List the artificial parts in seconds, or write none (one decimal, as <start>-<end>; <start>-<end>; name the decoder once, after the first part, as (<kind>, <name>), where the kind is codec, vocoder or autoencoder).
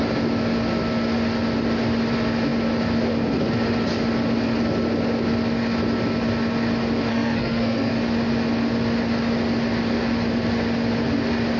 7.1-7.9 (codec, SNAC)